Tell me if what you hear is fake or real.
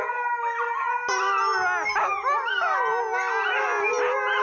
real